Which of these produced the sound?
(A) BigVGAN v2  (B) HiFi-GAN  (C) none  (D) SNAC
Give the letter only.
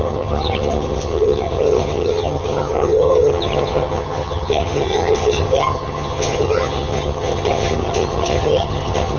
B